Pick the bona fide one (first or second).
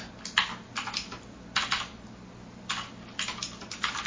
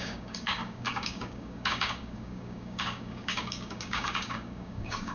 first